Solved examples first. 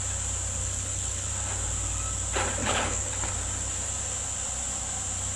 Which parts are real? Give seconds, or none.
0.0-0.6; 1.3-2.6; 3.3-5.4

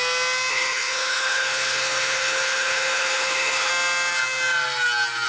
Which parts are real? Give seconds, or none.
0.0-0.5; 3.7-5.3

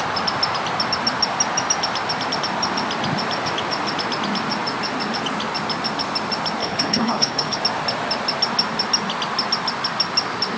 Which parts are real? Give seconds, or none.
0.0-6.6; 7.6-10.6

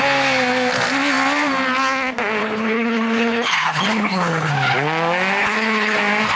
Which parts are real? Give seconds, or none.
0.0-2.4; 4.5-5.4; 6.0-6.4